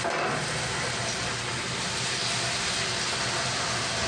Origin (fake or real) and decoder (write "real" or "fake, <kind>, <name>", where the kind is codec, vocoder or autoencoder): real